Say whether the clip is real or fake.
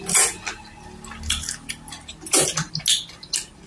real